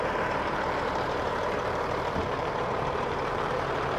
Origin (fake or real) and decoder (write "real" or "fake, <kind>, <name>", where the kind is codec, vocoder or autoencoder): fake, vocoder, BigVGAN v2